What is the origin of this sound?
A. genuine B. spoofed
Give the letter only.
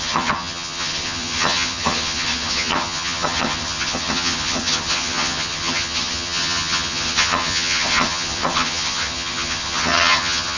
B